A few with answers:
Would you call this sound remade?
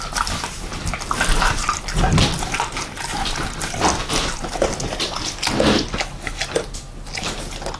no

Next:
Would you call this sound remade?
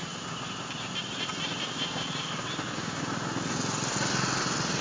no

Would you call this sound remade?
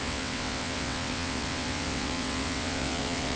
yes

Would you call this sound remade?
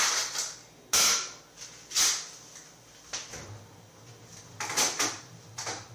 no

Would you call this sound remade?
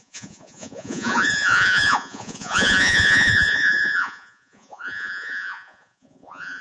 yes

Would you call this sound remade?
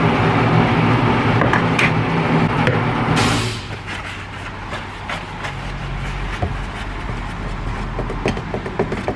no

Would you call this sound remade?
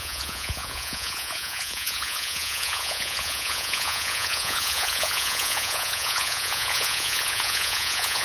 yes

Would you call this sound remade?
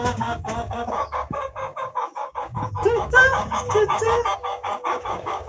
yes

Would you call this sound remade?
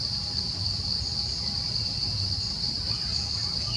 no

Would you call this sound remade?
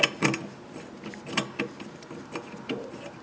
no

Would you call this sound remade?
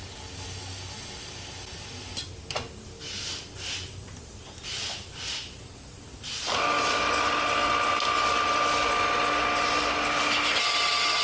no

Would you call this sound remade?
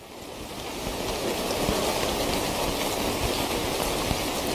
no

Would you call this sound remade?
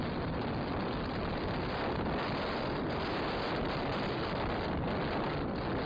no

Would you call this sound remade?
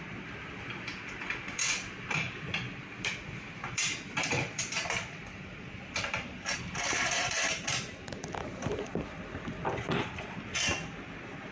yes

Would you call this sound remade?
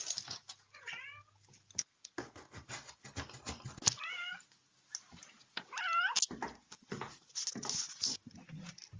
no